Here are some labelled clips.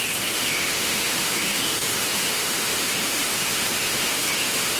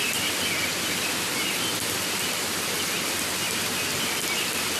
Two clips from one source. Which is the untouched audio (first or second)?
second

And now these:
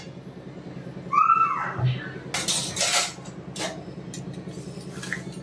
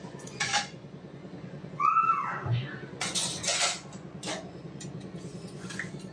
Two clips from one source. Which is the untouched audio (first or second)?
first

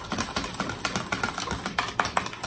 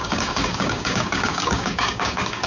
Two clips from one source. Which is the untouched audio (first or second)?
first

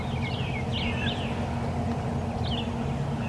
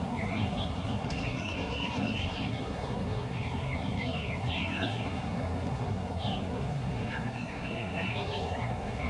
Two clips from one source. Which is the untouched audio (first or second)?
first